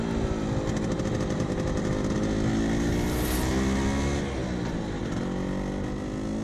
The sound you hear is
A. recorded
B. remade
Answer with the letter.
A